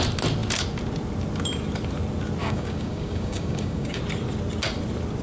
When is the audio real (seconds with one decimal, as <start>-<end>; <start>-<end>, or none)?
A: 0.0-2.4; 4.0-5.2